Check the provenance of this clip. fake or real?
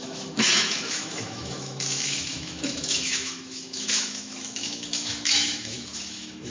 fake